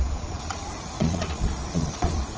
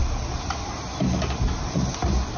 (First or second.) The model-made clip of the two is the first